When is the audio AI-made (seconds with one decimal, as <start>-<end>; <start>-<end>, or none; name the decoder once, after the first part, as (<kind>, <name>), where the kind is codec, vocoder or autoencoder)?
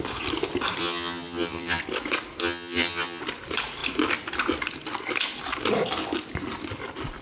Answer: 0.8-1.8 (vocoder, HiFi-GAN); 2.4-3.2